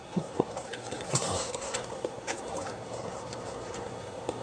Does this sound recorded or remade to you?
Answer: remade